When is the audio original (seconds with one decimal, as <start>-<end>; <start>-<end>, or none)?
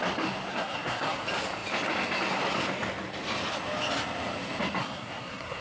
0.0-0.5; 1.2-4.8